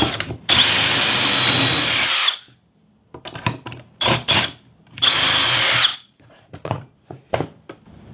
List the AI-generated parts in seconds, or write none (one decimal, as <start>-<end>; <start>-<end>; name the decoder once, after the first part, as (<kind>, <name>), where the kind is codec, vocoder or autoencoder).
5.9-7.3 (vocoder, Vocos)